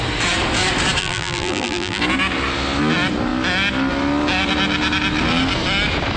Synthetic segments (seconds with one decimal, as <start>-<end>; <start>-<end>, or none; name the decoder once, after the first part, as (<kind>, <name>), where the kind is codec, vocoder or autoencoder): 1.0-2.0 (vocoder, BigVGAN v2)